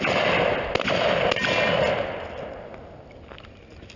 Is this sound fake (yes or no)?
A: no